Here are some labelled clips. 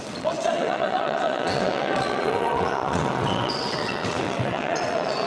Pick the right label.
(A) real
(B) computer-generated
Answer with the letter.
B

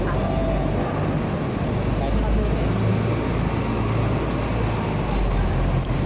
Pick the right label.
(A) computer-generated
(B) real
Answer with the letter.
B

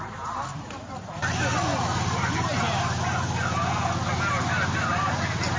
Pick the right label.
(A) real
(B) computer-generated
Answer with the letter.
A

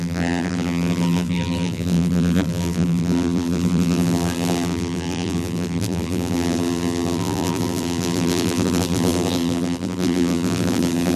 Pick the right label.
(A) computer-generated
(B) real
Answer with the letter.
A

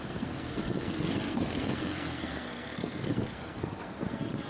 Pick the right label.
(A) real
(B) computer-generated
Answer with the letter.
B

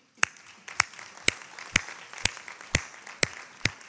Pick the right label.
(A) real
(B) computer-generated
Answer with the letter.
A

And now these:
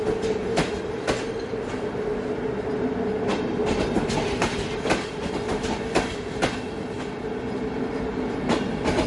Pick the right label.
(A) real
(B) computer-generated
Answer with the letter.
A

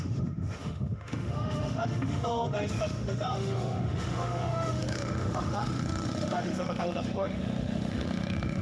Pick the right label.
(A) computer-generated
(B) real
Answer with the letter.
A